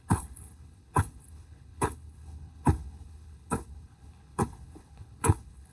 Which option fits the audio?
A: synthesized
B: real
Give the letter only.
A